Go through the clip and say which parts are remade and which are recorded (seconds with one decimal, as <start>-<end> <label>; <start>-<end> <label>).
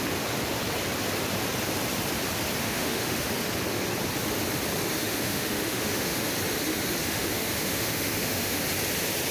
0.0-2.6 recorded; 2.6-3.3 remade; 3.3-5.0 recorded; 5.0-6.3 remade; 6.3-7.0 recorded; 7.0-8.6 remade; 8.6-9.3 recorded